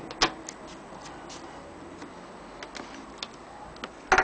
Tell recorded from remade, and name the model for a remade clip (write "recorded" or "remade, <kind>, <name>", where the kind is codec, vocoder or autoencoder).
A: recorded